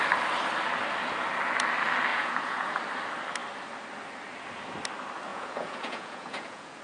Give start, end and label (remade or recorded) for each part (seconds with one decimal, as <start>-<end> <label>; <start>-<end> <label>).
0.0-2.1 recorded; 2.1-2.8 remade; 2.8-5.3 recorded; 5.3-6.8 remade